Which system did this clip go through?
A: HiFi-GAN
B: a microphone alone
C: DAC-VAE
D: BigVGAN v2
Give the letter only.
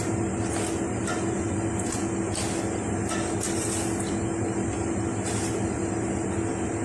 B